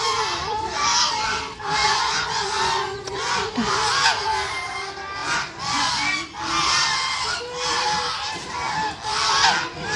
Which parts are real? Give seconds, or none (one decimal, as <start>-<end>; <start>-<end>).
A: 0.0-1.8; 3.7-5.2; 5.9-10.0